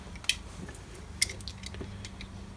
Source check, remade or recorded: recorded